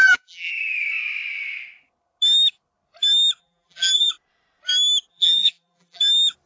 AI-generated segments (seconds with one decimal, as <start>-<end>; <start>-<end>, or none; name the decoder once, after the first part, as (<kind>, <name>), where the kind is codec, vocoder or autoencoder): 0.0-0.5 (vocoder, BigVGAN v2); 3.4-4.1; 5.1-6.0